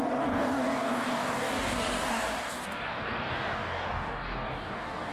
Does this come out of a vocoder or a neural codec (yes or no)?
yes